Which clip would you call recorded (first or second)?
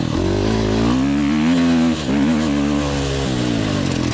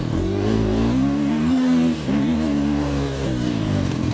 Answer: first